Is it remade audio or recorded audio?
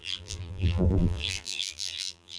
remade